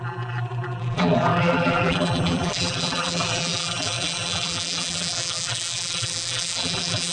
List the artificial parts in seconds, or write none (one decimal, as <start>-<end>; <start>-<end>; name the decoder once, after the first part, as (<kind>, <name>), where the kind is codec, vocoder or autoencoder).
0.0-7.1 (vocoder, BigVGAN v2)